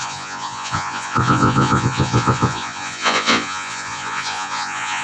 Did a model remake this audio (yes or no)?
yes